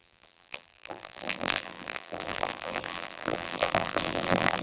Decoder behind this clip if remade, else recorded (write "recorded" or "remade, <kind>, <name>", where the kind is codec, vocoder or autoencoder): remade, vocoder, BigVGAN v2